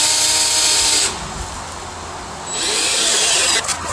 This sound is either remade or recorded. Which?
recorded